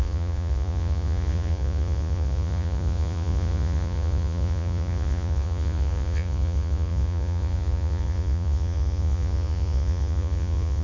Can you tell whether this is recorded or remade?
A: remade